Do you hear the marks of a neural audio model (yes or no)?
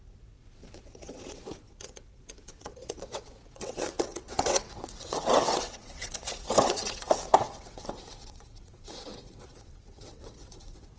yes